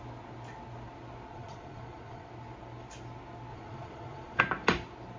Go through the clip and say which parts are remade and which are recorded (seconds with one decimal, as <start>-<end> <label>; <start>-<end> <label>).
0.0-1.3 recorded; 1.3-2.3 remade; 2.3-3.5 recorded; 3.5-4.4 remade; 4.4-5.2 recorded